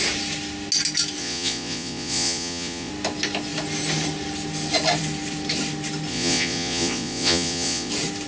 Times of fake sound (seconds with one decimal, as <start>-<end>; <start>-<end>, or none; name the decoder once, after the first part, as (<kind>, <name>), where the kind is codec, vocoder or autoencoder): 1.2-2.9 (vocoder, Vocos); 6.1-7.9